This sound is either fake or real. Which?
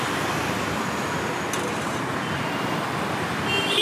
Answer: real